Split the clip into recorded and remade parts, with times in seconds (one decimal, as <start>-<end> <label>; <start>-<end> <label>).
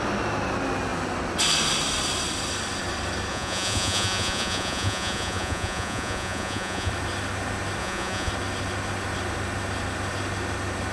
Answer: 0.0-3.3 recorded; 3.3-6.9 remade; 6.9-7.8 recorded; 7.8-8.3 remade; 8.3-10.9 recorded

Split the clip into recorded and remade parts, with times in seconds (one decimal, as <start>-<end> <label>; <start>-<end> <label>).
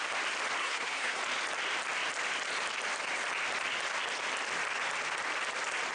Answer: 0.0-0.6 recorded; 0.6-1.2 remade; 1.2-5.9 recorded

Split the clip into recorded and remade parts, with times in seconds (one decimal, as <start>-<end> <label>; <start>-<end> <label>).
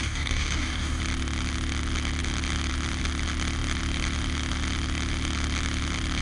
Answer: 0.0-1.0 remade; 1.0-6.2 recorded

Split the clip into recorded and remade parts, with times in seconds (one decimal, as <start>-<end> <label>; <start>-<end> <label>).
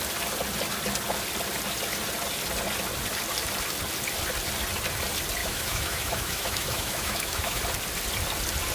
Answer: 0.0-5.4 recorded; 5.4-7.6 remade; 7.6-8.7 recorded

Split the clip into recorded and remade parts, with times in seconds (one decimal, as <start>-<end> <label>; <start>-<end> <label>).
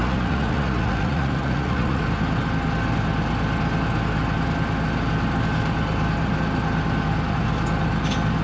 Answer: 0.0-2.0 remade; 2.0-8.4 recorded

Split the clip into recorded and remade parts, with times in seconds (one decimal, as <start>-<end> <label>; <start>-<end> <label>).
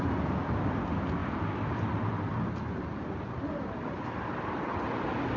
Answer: 0.0-5.4 recorded